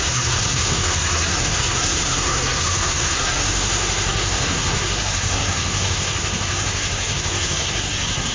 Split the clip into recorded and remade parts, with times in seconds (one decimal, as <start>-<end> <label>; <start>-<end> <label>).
0.0-8.3 remade